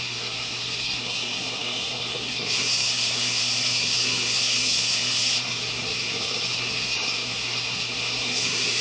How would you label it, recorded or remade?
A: remade